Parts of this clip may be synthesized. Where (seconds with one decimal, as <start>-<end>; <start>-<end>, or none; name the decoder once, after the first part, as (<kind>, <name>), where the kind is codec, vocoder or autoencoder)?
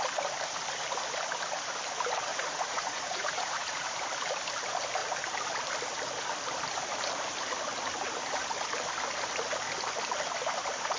2.3-3.8 (vocoder, Vocos)